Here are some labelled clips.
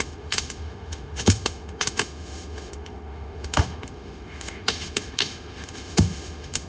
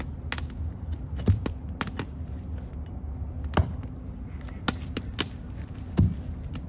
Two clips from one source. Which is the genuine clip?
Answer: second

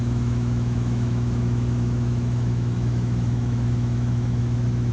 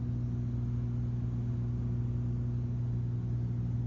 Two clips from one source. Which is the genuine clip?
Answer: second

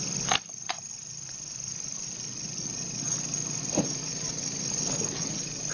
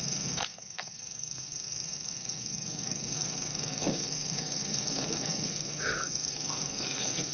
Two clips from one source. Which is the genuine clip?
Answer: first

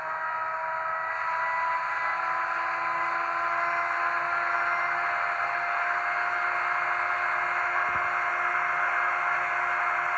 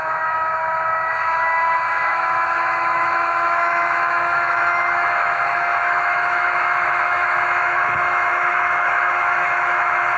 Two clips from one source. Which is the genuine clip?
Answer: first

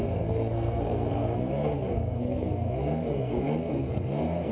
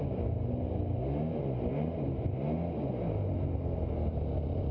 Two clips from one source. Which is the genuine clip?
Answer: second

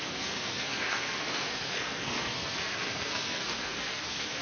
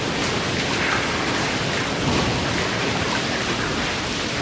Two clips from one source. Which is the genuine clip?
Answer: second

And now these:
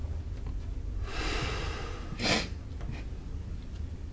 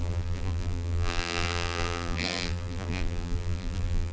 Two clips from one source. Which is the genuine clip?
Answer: first